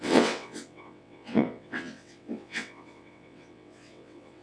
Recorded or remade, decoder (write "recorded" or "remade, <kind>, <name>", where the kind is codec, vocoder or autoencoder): remade, vocoder, WaveNeXt